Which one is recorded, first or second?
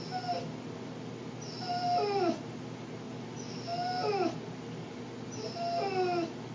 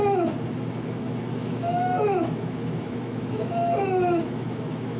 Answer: first